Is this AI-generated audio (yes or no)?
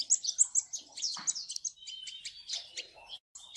no